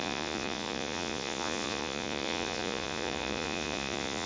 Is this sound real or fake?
fake